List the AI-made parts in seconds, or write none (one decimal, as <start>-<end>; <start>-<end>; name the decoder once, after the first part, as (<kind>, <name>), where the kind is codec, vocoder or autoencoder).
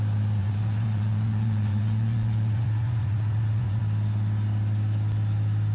0.4-3.8 (vocoder, Vocos)